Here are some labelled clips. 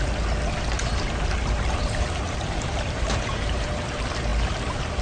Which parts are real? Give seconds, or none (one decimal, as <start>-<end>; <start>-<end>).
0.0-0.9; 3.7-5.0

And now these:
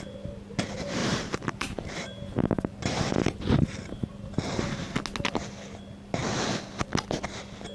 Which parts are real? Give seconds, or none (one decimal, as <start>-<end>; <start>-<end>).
0.0-1.0; 4.1-7.7

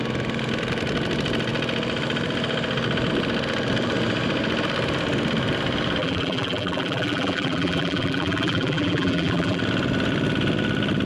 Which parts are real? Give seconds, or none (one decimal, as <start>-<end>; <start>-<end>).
0.0-6.0; 9.6-11.1